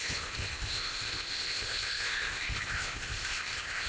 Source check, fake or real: fake